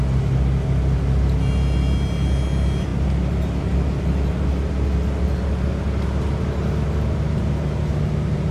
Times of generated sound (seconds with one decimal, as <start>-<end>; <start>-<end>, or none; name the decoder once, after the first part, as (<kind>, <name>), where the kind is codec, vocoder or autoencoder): none